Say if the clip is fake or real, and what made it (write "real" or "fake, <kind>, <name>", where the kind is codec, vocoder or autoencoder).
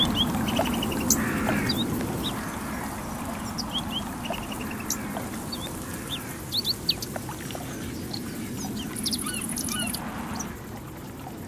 real